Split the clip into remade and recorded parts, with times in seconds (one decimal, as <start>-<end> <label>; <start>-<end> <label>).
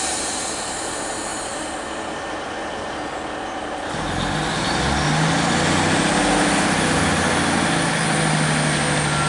0.0-9.3 recorded